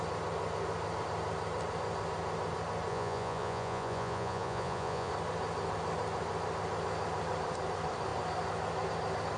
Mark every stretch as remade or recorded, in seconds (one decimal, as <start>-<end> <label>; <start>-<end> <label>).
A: 0.0-2.9 recorded; 2.9-5.1 remade; 5.1-9.4 recorded

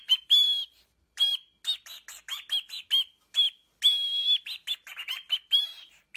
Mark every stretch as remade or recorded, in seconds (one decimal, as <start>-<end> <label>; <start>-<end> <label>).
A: 0.0-1.3 remade; 1.3-5.0 recorded; 5.0-6.2 remade

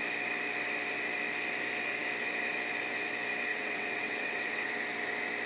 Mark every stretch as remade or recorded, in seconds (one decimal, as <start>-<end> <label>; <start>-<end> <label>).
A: 0.0-3.5 recorded; 3.5-4.7 remade; 4.7-5.5 recorded

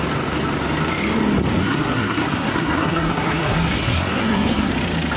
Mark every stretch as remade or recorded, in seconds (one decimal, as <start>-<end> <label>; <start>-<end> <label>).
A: 0.0-1.6 recorded; 1.6-4.7 remade; 4.7-5.2 recorded

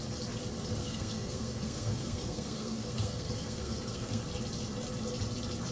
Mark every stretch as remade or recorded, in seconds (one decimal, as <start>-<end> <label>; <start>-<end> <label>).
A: 0.0-0.8 recorded; 0.8-4.2 remade; 4.2-5.7 recorded

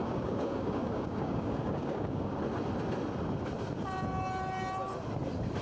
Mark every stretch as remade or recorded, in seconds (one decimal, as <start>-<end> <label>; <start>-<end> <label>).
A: 0.0-2.3 remade; 2.3-5.6 recorded

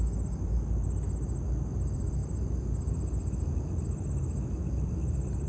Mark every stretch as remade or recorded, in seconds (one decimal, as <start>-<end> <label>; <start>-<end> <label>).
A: 0.0-5.5 recorded